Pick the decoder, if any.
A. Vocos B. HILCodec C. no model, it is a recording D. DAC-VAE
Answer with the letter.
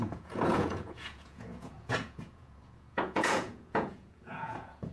A